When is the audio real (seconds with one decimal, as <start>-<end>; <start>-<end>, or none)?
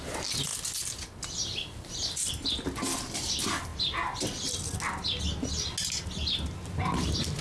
0.0-7.4